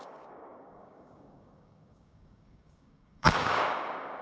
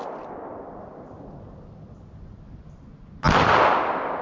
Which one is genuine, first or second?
second